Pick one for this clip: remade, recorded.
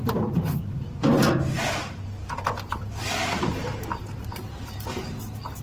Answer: recorded